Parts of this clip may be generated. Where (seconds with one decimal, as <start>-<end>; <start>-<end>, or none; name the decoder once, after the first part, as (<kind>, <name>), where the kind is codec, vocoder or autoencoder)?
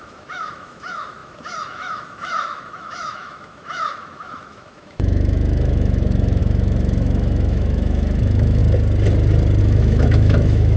0.0-8.6 (autoencoder, DAC-VAE); 9.6-10.8